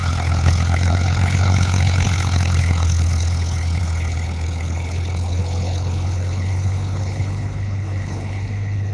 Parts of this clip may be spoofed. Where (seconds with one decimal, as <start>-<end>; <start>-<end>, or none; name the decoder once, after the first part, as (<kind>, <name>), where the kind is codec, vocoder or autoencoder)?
0.0-8.9 (codec, HILCodec)